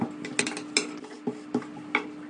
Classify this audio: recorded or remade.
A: recorded